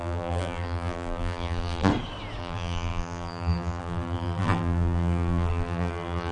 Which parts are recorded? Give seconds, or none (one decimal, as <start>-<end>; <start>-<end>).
1.9-2.4